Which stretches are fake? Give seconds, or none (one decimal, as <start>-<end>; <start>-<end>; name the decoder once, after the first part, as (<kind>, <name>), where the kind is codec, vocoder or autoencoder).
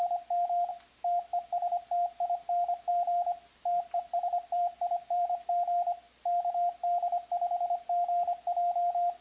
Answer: 2.9-5.5 (vocoder, BigVGAN v2)